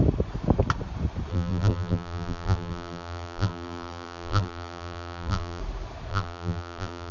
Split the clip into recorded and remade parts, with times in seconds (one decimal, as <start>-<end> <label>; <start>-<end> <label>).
0.0-1.3 recorded; 1.3-5.6 remade; 5.6-6.1 recorded; 6.1-7.1 remade